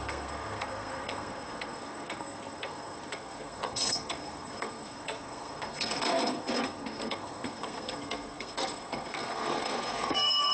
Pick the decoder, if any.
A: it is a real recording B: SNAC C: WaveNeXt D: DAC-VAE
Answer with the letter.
B